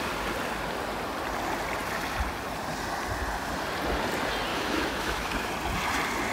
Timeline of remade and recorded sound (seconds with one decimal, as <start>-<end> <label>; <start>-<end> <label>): 0.0-4.5 recorded; 4.5-5.5 remade; 5.5-6.3 recorded